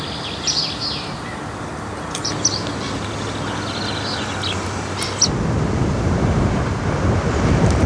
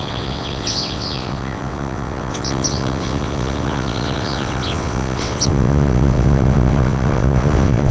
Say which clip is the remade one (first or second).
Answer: second